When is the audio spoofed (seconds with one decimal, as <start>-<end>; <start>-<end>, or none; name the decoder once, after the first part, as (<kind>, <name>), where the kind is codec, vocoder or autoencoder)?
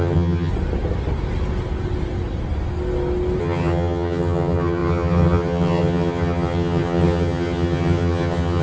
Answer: 0.0-0.5 (vocoder, HiFi-GAN); 3.4-8.6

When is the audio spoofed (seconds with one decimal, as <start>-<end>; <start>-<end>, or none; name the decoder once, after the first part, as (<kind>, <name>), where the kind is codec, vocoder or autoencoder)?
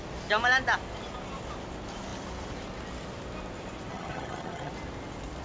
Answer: 3.9-4.7 (vocoder, HiFi-GAN)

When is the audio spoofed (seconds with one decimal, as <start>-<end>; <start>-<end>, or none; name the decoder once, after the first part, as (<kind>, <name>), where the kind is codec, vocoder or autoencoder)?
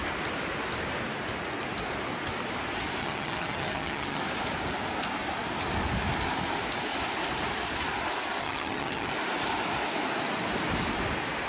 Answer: 3.0-4.2 (vocoder, HiFi-GAN); 8.4-9.1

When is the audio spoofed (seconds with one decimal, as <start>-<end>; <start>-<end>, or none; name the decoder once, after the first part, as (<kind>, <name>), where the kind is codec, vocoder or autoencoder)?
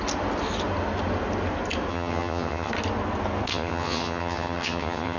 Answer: 1.9-2.7 (vocoder, HiFi-GAN); 3.5-5.2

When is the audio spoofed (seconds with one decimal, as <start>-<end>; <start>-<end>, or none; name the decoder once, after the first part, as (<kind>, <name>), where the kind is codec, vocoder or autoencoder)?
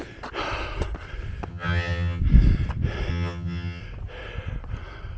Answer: 1.5-2.2 (vocoder, HiFi-GAN); 3.1-3.8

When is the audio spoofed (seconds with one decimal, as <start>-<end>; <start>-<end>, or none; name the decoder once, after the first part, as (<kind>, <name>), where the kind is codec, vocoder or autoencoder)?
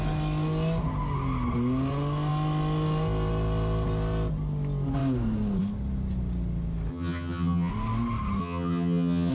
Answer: 6.9-7.7 (vocoder, HiFi-GAN); 8.4-9.3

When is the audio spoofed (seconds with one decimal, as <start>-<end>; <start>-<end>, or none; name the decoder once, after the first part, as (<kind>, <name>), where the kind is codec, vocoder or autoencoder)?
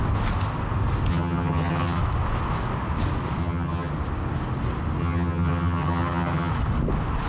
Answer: 1.1-2.0 (vocoder, HiFi-GAN); 3.4-3.9; 5.0-6.5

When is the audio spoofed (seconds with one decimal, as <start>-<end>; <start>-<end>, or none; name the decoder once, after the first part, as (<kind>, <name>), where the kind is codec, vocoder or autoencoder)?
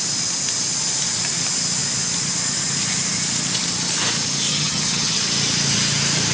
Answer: 4.5-5.2 (vocoder, HiFi-GAN)